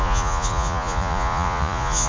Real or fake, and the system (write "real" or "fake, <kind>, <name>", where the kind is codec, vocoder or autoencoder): fake, vocoder, Vocos